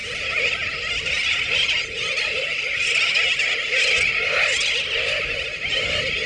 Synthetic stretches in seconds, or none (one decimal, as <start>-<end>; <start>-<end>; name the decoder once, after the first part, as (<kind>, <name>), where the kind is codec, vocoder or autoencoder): none